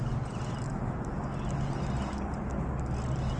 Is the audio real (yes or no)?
yes